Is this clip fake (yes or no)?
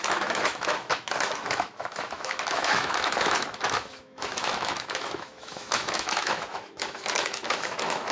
yes